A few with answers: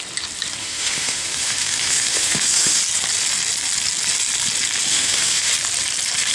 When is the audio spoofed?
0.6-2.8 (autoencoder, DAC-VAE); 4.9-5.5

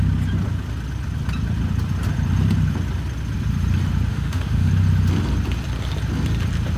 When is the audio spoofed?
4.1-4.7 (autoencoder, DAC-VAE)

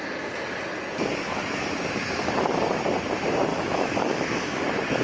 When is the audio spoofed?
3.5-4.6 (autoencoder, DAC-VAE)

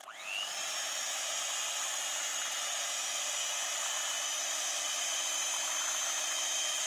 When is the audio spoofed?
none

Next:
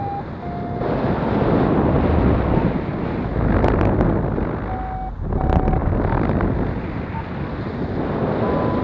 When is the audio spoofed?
none

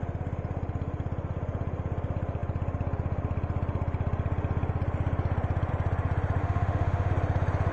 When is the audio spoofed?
6.4-7.1 (autoencoder, DAC-VAE)

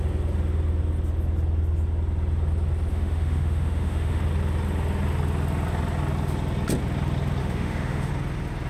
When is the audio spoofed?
2.9-4.2 (autoencoder, DAC-VAE); 7.4-8.1

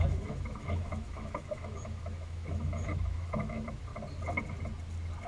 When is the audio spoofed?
0.0-3.9 (autoencoder, DAC-VAE)